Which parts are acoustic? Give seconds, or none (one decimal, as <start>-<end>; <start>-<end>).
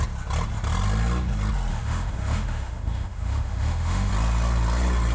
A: 0.0-1.7; 4.1-5.1